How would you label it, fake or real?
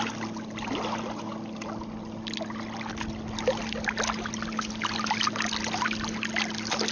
real